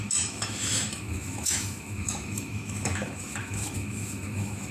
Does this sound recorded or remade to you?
remade